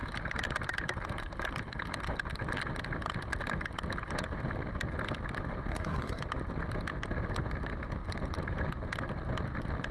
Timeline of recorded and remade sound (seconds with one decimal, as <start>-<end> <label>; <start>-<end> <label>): 0.0-5.7 recorded; 5.7-6.2 remade; 6.2-9.9 recorded